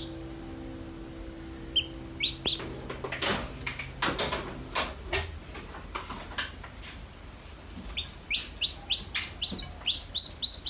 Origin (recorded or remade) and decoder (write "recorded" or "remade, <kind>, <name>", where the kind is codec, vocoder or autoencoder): recorded